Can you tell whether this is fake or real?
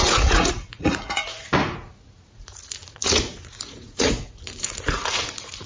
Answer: fake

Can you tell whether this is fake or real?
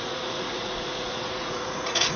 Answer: fake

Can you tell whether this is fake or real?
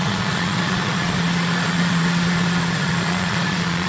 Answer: fake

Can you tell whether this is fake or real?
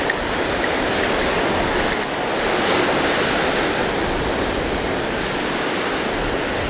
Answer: real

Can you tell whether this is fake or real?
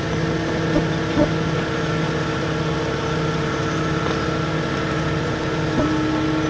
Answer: real